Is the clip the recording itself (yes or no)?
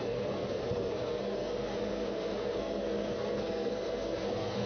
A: no